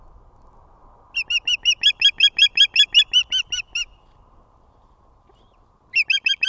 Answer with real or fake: real